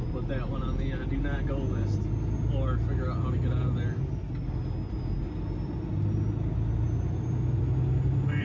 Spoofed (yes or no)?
no